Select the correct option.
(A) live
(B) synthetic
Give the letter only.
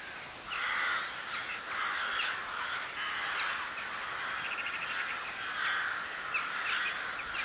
A